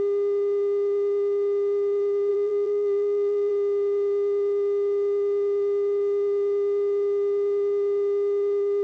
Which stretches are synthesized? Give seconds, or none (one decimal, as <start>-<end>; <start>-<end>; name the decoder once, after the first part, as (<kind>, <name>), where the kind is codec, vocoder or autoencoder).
2.3-3.5 (vocoder, BigVGAN v2)